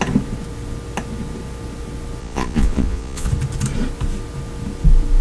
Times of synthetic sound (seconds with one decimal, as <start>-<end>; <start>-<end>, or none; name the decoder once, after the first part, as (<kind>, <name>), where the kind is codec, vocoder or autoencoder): 2.2-3.3 (vocoder, Vocos)